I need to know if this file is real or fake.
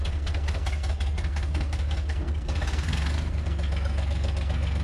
fake